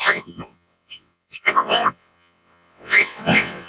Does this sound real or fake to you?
fake